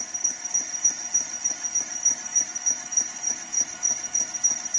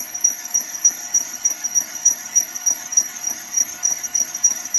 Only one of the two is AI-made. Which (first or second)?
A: second